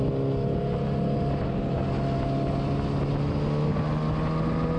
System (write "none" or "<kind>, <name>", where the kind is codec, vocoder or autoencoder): none